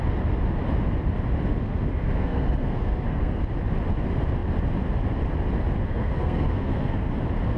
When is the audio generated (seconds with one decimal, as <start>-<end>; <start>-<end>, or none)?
1.5-3.4; 5.8-7.1